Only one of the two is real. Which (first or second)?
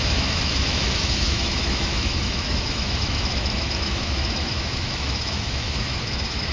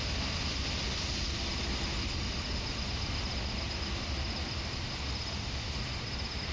second